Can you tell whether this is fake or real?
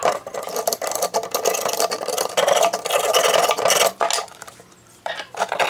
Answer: real